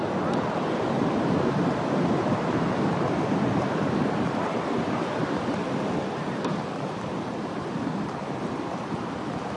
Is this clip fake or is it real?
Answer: fake